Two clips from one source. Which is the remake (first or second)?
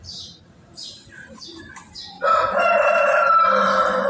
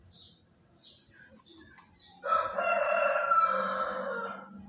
first